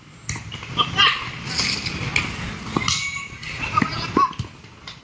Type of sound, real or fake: real